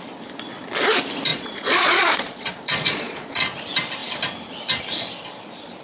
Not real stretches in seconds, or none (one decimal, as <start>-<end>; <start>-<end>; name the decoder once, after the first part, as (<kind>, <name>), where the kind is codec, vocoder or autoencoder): 1.3-3.3 (vocoder, Vocos)